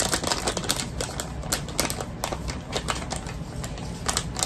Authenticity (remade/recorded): recorded